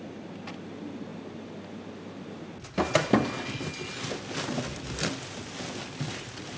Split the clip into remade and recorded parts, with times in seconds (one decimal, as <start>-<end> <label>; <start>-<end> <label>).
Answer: 0.0-6.6 recorded